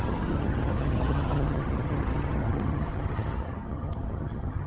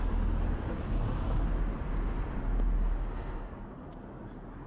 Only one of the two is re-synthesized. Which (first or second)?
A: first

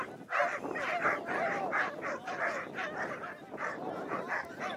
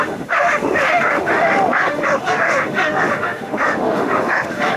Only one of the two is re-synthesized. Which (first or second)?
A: second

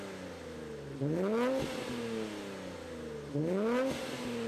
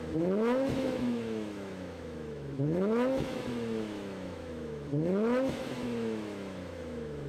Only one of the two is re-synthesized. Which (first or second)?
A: second